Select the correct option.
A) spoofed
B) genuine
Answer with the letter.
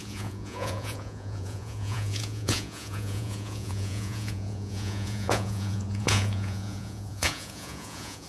A